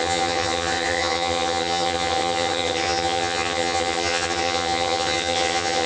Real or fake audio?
fake